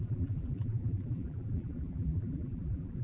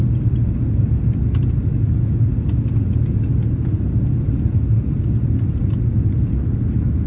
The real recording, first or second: second